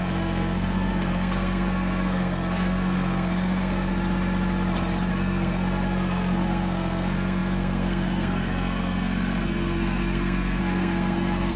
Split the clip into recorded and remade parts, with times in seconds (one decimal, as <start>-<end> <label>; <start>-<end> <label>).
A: 0.0-3.9 remade; 3.9-5.1 recorded; 5.1-11.6 remade